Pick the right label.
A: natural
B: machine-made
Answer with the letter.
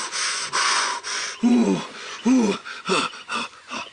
B